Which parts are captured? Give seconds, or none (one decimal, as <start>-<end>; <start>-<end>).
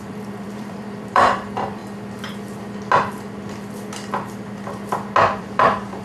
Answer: 1.8-5.4